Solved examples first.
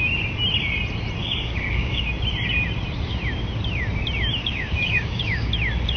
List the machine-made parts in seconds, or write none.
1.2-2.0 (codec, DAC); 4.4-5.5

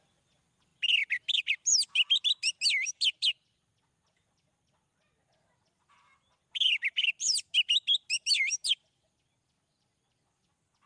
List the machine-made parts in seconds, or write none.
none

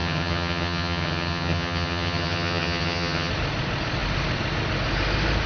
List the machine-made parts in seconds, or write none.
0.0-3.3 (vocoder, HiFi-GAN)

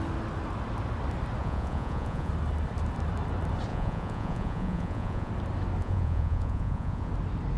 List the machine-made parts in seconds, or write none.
1.4-2.3 (vocoder, Vocos); 3.7-5.3; 5.8-7.1

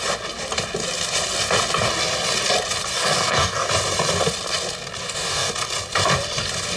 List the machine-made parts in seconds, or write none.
2.9-3.7 (codec, DAC); 5.0-5.5